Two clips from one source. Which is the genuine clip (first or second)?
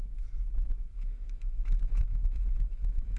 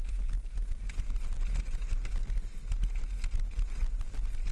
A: second